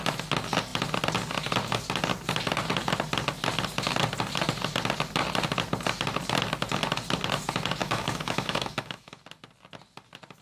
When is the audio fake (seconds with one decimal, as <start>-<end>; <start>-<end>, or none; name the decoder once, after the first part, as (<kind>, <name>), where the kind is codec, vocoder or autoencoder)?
7.8-9.2 (autoencoder, DAC-VAE)